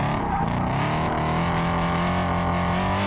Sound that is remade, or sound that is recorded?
recorded